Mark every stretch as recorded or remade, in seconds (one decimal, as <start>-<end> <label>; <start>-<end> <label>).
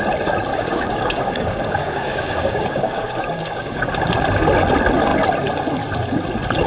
0.0-0.5 recorded; 0.5-3.9 remade; 3.9-6.7 recorded